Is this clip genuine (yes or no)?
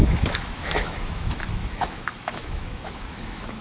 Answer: no